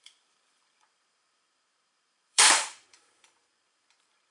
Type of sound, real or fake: fake